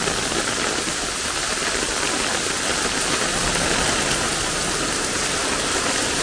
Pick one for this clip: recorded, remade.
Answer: recorded